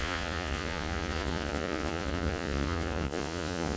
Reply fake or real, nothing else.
fake